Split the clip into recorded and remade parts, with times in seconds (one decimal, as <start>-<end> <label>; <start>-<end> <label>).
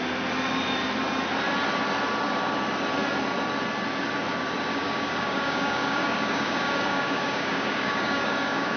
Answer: 0.0-4.7 recorded; 4.7-8.8 remade